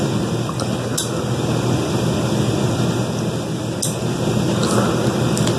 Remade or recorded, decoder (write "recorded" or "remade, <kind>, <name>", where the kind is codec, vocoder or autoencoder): recorded